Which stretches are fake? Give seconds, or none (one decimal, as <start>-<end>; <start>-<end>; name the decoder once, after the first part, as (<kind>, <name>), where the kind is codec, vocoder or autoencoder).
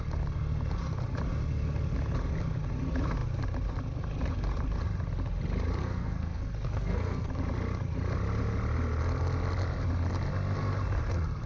5.8-7.3 (codec, SNAC)